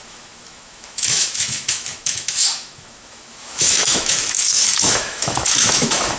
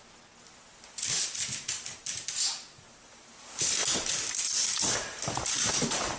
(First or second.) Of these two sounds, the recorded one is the second